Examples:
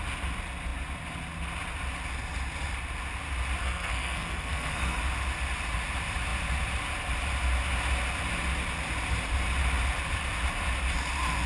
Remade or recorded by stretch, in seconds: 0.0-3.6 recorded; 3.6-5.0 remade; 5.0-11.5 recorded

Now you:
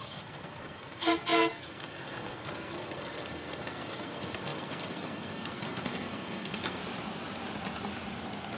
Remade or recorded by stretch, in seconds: 0.0-6.8 remade; 6.8-8.6 recorded

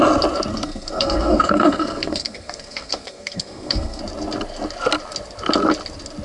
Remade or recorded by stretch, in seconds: 0.0-0.5 recorded; 0.5-4.0 remade; 4.0-6.2 recorded

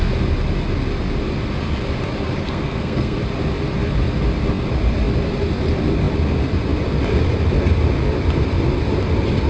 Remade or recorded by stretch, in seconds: 0.0-2.4 recorded; 2.4-3.2 remade; 3.2-9.5 recorded